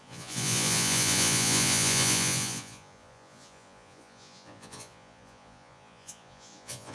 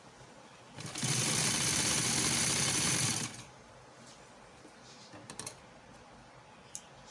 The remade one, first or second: first